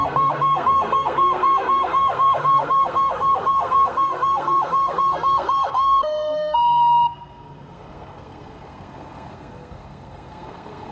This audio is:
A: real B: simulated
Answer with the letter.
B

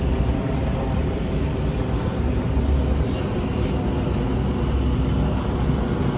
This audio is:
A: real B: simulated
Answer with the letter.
A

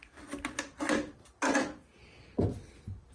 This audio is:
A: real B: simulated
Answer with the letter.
A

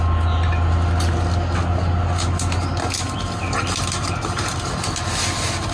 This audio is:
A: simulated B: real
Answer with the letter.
B